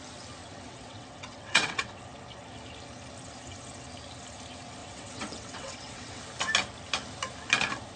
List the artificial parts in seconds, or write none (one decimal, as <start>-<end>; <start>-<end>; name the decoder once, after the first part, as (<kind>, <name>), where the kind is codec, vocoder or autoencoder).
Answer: 0.4-2.0 (vocoder, WaveNeXt); 4.8-6.2